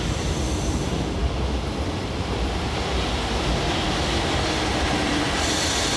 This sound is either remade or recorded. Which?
recorded